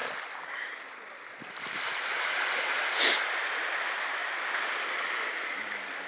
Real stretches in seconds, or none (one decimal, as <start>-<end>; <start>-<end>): 0.0-6.1